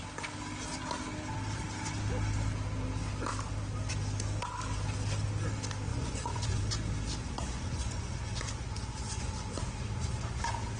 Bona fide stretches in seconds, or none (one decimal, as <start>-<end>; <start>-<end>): 0.0-5.9; 6.6-7.2; 10.4-10.8